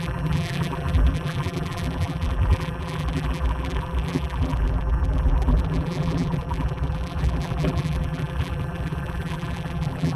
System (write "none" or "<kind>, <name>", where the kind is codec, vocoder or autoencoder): vocoder, BigVGAN v2